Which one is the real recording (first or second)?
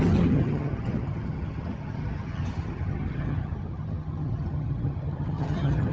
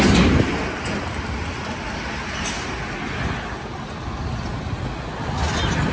second